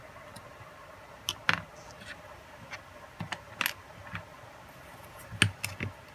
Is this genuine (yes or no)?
yes